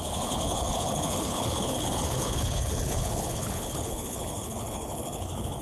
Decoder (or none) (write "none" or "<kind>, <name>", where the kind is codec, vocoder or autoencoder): codec, HILCodec